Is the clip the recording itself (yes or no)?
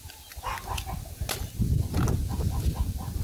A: yes